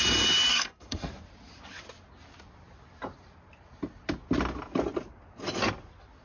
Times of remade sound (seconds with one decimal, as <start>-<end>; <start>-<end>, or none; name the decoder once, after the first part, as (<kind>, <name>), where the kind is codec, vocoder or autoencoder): 0.5-1.1 (codec, SNAC)